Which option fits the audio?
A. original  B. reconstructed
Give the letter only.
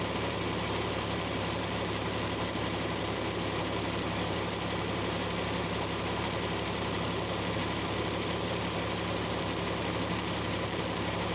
B